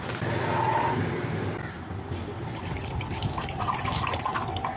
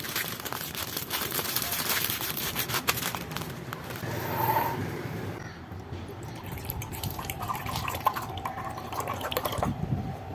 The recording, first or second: first